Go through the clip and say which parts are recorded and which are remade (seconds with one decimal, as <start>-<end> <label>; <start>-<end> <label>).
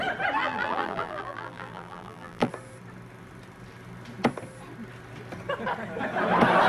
0.0-0.4 recorded; 0.4-2.5 remade; 2.5-6.7 recorded